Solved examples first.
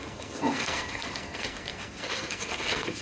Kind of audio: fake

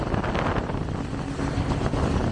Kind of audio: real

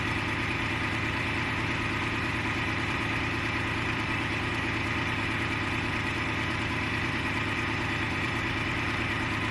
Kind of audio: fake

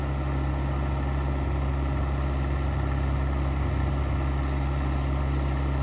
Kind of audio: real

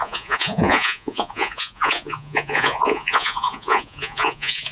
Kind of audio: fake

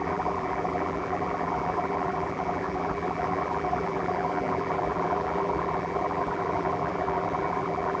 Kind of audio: fake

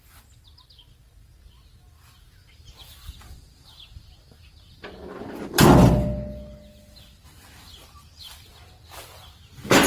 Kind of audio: real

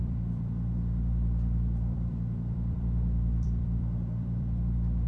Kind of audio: fake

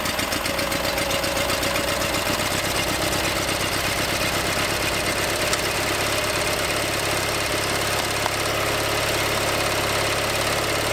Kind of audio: real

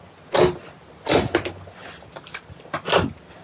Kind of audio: real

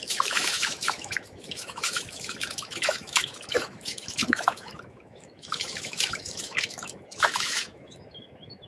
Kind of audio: fake